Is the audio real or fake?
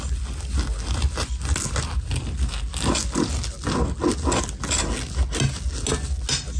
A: real